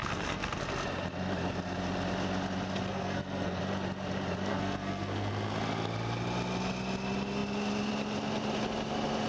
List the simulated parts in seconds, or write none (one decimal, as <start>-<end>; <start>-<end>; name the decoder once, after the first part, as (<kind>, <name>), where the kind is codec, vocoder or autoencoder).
0.0-0.6 (codec, SNAC); 2.9-3.6; 4.5-5.3